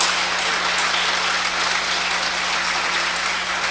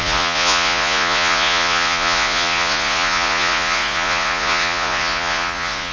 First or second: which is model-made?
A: second